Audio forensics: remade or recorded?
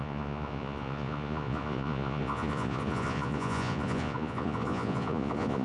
remade